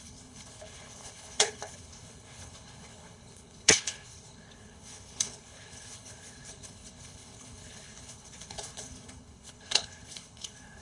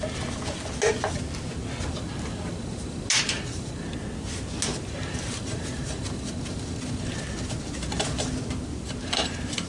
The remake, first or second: first